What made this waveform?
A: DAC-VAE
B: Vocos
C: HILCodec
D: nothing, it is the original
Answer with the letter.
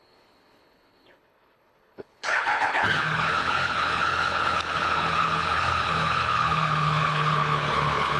C